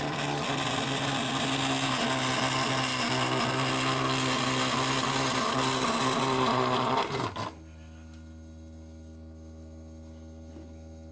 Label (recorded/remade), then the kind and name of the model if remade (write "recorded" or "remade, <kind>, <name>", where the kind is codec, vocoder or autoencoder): recorded